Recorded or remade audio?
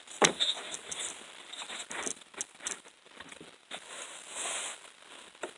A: recorded